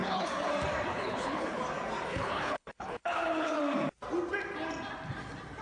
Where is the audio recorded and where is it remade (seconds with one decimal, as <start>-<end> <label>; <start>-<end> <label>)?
0.0-0.5 remade; 0.5-0.9 recorded; 0.9-1.6 remade; 1.6-2.1 recorded; 2.1-3.6 remade; 3.6-5.6 recorded